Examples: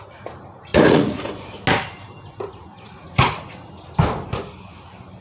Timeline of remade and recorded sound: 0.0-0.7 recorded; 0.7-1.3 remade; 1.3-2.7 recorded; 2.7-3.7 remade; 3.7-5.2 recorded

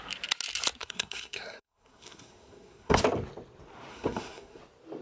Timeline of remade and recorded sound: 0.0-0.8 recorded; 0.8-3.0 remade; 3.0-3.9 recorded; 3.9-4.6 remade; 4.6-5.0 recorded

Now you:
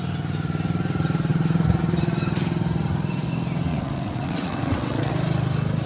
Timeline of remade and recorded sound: 0.0-3.7 recorded; 3.7-5.1 remade; 5.1-5.9 recorded

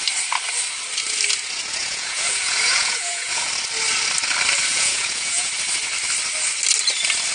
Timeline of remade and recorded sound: 0.0-1.8 recorded; 1.8-3.5 remade; 3.5-4.7 recorded; 4.7-5.5 remade; 5.5-7.3 recorded

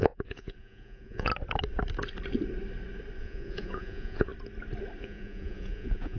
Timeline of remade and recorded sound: 0.0-1.3 remade; 1.3-3.2 recorded; 3.2-4.3 remade; 4.3-5.0 recorded; 5.0-6.2 remade

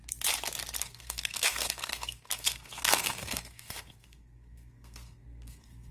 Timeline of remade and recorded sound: 0.0-0.8 recorded; 0.8-5.9 remade